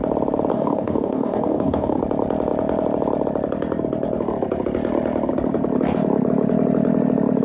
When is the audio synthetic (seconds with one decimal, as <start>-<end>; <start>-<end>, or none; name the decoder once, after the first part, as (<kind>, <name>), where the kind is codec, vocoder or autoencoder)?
0.5-2.0 (codec, DAC)